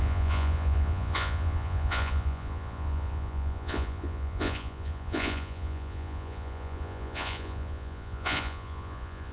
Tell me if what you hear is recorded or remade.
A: remade